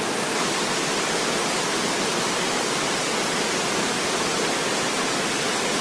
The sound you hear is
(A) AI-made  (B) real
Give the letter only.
B